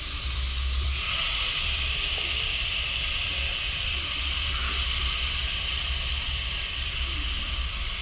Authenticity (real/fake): fake